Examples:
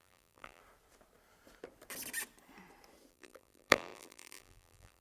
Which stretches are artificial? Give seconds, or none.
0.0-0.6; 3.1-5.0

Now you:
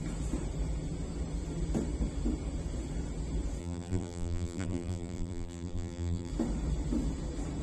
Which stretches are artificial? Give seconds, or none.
3.6-6.3

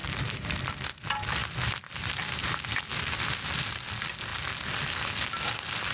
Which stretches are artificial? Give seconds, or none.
0.0-0.7; 1.4-3.2